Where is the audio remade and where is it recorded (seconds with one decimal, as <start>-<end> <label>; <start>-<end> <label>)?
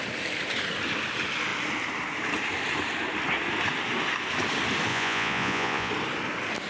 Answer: 0.0-4.9 recorded; 4.9-5.9 remade; 5.9-6.7 recorded